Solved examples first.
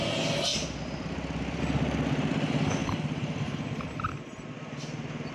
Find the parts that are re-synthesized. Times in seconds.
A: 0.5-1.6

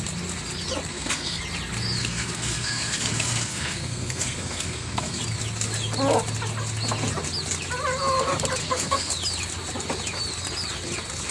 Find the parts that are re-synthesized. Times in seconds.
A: 0.9-1.4; 2.0-5.2; 8.6-9.1

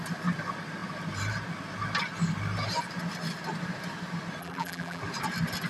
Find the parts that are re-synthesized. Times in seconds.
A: 4.4-5.0

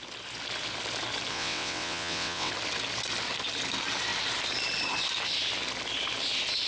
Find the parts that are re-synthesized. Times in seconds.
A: 1.3-2.5

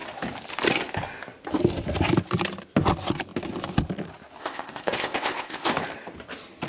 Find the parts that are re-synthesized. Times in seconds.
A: 4.4-5.7

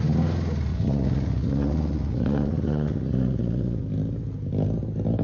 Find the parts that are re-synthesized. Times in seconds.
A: 0.7-3.8

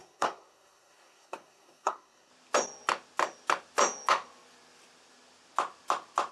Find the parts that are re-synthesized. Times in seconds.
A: 0.0-2.3